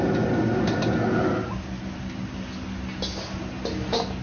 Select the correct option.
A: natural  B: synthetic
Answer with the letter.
A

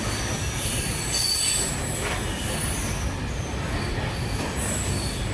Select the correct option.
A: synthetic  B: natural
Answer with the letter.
B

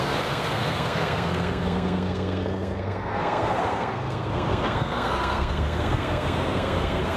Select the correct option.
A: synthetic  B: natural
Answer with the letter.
A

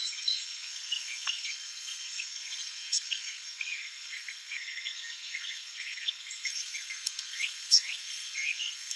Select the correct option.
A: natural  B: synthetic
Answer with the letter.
B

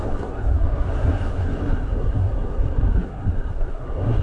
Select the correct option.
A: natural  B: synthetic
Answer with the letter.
B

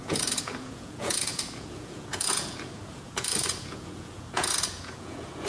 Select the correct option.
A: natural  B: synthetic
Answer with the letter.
B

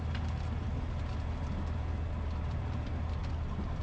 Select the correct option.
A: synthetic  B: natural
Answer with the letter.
B